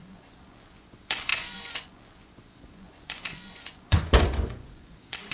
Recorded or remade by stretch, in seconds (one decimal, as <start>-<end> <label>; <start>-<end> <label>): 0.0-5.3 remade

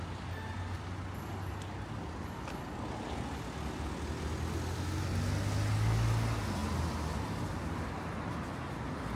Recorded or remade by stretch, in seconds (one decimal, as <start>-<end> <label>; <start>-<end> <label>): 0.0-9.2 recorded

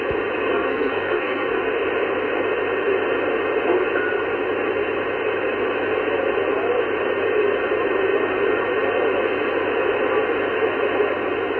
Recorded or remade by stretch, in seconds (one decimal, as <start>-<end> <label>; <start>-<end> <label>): 0.0-0.5 recorded; 0.5-1.7 remade; 1.7-11.6 recorded